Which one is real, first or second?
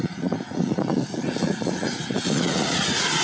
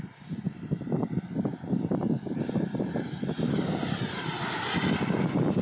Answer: second